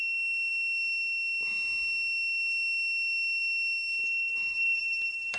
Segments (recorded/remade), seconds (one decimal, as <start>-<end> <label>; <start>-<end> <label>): 0.0-4.3 recorded; 4.3-5.4 remade